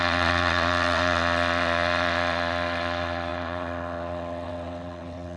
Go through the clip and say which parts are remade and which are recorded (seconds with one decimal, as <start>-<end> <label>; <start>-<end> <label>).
0.0-5.4 remade